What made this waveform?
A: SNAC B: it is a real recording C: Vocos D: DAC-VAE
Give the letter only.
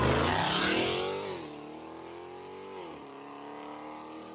B